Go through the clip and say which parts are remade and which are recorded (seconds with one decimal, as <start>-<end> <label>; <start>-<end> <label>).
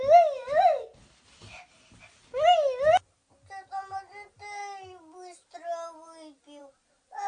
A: 0.0-7.3 recorded